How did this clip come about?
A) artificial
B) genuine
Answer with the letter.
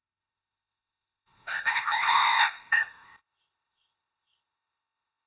A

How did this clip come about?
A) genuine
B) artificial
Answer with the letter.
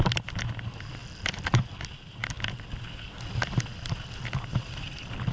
A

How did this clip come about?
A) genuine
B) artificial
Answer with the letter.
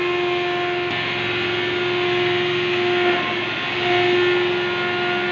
A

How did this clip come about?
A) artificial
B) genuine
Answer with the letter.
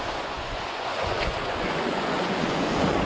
A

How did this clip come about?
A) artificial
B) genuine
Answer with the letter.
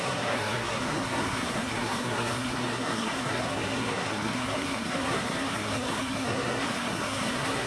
A